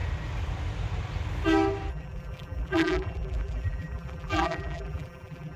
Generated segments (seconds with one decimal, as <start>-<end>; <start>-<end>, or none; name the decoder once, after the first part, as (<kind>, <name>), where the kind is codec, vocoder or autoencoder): 1.9-5.6 (vocoder, BigVGAN v2)